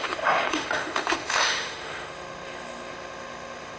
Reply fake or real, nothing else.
fake